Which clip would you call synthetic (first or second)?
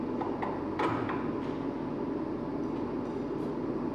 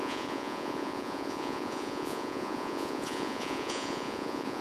second